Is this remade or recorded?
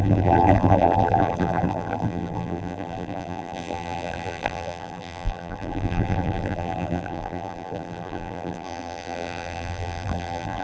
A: remade